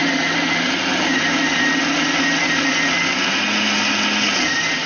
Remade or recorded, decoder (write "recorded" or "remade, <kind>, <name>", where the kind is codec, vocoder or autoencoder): recorded